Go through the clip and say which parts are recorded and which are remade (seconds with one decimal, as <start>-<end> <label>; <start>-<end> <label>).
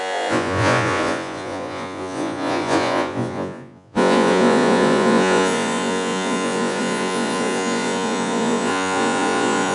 0.0-9.7 remade